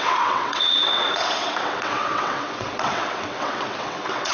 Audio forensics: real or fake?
fake